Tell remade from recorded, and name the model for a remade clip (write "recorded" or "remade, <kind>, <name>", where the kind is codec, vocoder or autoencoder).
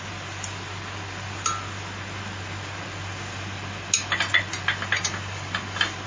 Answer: recorded